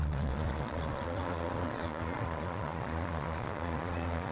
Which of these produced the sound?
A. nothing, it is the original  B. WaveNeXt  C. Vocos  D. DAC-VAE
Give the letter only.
C